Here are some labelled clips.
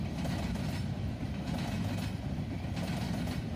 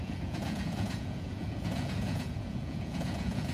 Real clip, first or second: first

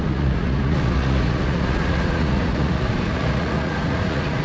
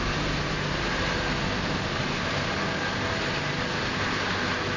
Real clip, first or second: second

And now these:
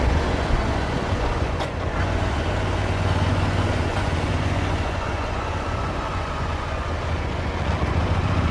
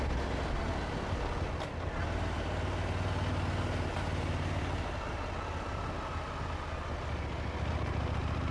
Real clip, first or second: second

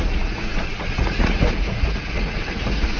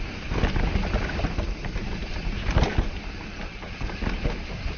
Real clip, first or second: second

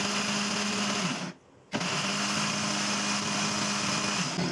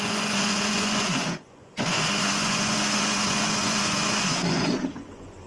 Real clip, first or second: first